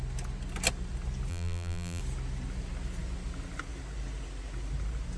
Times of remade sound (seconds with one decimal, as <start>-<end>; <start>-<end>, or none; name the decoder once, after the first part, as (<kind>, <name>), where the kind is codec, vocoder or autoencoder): 1.3-2.0 (vocoder, BigVGAN v2)